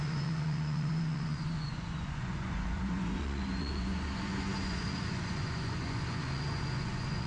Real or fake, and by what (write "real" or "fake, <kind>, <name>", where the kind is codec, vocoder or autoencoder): fake, vocoder, Vocos